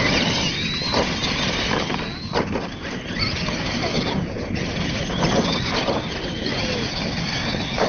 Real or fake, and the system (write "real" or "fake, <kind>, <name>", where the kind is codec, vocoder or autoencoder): real